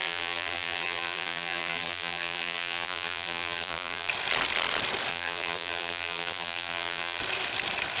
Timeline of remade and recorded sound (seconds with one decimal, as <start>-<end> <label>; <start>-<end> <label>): 0.0-4.1 remade; 4.1-5.1 recorded; 5.1-7.2 remade; 7.2-8.0 recorded